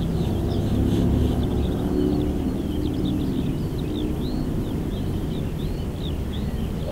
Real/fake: real